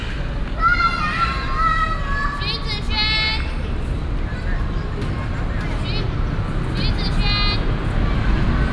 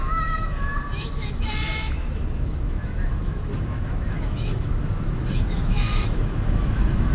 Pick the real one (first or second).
first